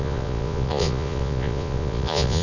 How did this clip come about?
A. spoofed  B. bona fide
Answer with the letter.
A